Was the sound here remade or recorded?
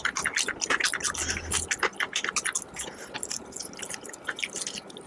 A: recorded